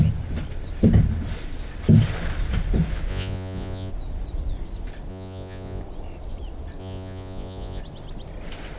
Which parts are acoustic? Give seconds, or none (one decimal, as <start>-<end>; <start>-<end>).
0.0-3.1; 3.9-5.1; 5.8-6.8; 7.8-8.8